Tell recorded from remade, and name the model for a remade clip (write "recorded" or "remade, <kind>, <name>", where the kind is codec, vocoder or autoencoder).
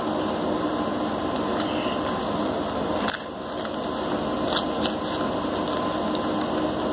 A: recorded